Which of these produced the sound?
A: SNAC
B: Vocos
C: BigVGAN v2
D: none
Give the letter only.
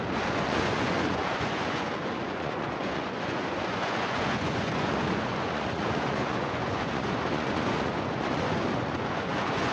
B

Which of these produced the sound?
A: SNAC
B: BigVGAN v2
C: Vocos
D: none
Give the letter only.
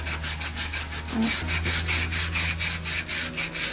D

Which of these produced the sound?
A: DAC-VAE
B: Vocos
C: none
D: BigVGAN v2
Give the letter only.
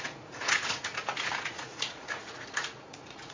B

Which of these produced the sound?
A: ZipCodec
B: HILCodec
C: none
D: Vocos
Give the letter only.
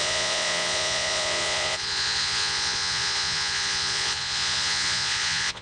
D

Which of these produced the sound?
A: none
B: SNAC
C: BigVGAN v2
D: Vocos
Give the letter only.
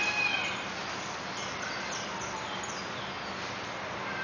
A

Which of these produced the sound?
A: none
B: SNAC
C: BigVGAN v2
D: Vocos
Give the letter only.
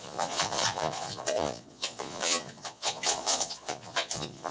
D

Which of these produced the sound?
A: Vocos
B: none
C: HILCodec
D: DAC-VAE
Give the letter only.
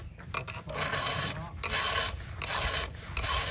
B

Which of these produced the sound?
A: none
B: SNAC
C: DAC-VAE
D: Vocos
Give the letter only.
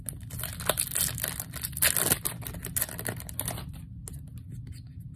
A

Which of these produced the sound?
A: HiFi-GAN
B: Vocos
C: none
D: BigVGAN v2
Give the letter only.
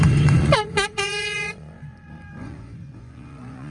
B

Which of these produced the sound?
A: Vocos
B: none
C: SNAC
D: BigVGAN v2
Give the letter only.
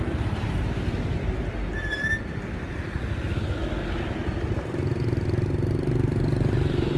B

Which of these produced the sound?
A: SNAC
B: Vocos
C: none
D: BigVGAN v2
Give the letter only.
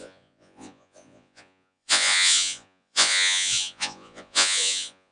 B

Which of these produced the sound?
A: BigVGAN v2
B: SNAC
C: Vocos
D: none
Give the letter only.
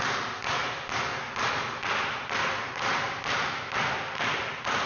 D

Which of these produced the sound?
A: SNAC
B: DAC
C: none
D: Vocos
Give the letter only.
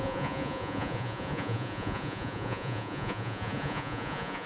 D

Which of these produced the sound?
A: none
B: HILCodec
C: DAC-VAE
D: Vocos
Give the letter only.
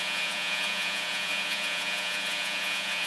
D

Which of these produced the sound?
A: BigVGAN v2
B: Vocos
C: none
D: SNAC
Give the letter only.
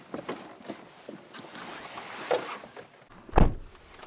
C